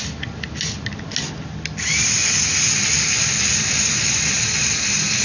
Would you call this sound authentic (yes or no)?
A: yes